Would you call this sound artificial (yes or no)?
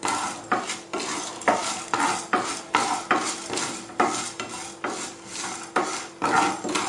no